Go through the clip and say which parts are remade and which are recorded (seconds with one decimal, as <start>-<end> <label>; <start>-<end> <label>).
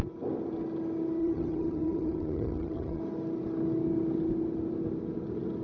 0.0-1.2 recorded; 1.2-3.0 remade; 3.0-5.6 recorded